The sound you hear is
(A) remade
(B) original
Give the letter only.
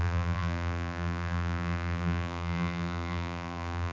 A